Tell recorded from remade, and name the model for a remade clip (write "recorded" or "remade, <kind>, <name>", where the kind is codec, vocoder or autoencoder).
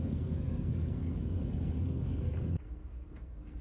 remade, codec, SNAC